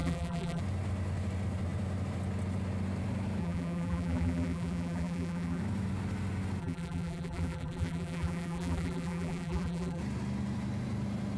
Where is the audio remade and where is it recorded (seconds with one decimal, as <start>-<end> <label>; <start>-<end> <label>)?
0.0-0.6 remade; 0.6-3.4 recorded; 3.4-5.6 remade; 5.6-6.6 recorded; 6.6-10.0 remade; 10.0-11.4 recorded